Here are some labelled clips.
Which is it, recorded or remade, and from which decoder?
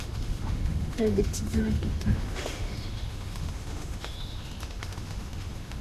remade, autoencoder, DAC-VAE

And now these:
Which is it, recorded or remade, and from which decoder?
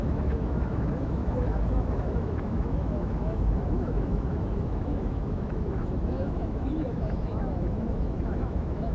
remade, autoencoder, DAC-VAE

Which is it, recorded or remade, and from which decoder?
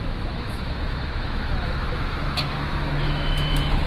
remade, autoencoder, DAC-VAE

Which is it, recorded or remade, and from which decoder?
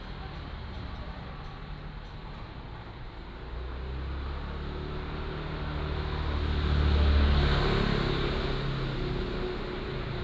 recorded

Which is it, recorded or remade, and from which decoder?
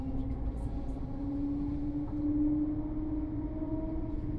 recorded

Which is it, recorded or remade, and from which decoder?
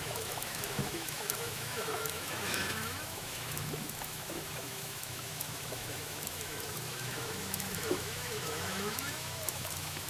remade, autoencoder, DAC-VAE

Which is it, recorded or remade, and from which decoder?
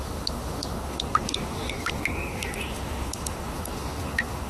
remade, autoencoder, DAC-VAE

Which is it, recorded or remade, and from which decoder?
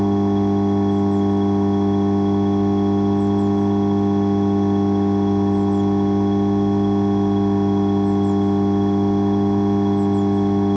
recorded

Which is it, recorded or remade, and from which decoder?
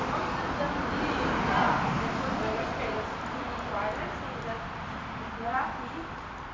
recorded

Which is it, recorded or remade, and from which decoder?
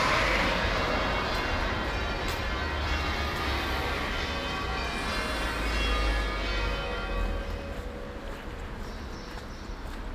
recorded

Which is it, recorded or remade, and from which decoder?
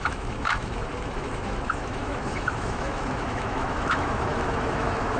remade, autoencoder, DAC-VAE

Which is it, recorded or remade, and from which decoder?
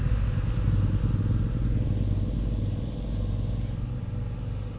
recorded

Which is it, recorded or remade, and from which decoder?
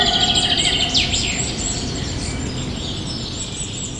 recorded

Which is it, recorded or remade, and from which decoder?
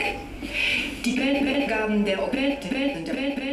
recorded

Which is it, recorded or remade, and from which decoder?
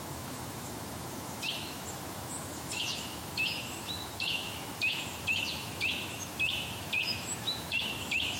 remade, autoencoder, DAC-VAE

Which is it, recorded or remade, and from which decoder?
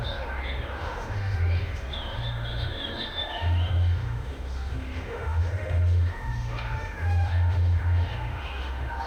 remade, autoencoder, DAC-VAE